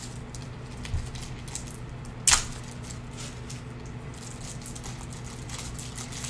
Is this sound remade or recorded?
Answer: recorded